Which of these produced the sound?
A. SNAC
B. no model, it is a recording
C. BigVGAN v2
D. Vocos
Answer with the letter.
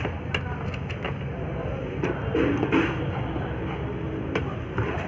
B